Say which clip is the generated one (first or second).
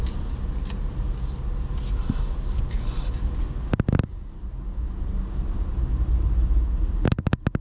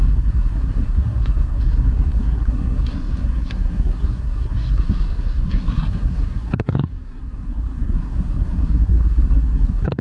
second